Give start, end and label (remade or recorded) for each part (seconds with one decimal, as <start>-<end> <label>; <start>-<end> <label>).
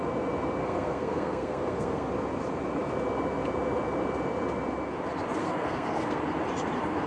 0.0-0.6 recorded; 0.6-2.1 remade; 2.1-5.4 recorded; 5.4-6.2 remade; 6.2-7.1 recorded